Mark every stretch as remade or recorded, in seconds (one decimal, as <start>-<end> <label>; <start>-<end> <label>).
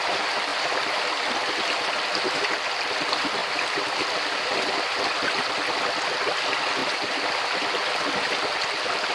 0.0-9.1 recorded